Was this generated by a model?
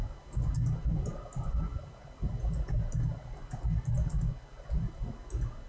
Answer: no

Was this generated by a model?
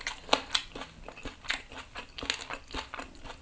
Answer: no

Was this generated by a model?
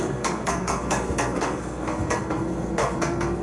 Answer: yes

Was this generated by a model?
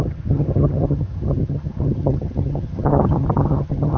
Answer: yes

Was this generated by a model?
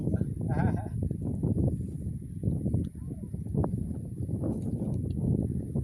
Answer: no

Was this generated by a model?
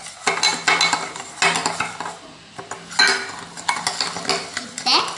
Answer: no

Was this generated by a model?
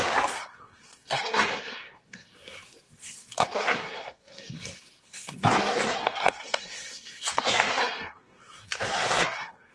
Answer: yes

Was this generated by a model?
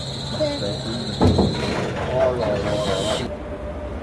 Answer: no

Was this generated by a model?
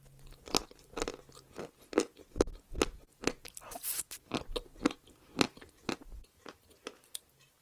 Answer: no